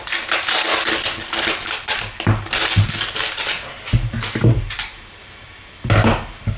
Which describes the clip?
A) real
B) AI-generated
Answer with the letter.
A